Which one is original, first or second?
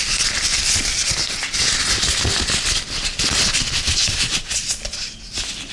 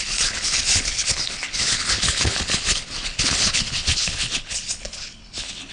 first